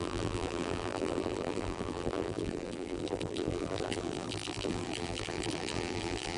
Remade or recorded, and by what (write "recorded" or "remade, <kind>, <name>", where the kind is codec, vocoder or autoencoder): remade, vocoder, BigVGAN v2